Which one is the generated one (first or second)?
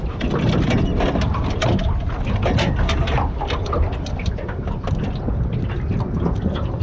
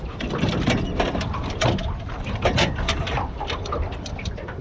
second